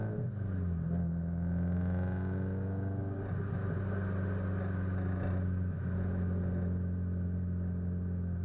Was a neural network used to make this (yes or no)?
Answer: no